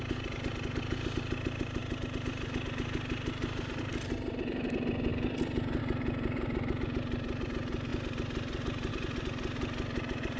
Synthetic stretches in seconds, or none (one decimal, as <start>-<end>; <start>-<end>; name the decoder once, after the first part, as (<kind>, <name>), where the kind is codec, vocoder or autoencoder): none